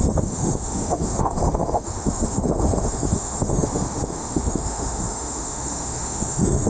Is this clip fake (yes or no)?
yes